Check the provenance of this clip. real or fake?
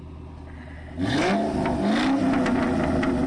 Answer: real